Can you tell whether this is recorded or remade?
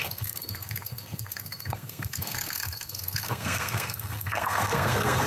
remade